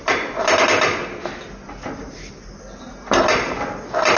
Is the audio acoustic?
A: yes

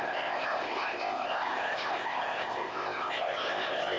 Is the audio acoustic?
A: no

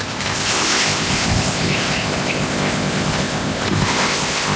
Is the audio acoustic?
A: no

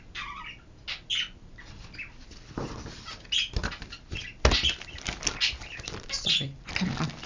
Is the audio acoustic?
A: yes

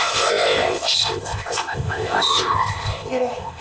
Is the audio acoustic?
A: no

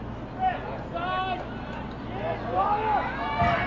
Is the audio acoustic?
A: yes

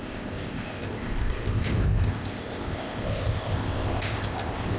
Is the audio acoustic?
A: no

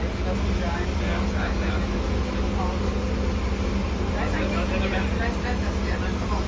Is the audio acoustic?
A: yes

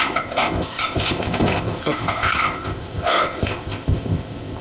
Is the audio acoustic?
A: no